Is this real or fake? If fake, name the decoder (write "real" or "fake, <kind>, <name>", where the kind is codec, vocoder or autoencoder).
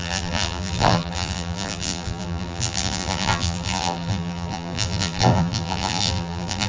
fake, vocoder, BigVGAN v2